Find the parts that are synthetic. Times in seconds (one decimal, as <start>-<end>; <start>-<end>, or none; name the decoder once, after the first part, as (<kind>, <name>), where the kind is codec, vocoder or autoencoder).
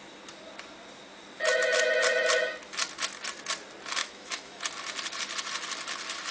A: 4.0-4.6 (autoencoder, DAC-VAE)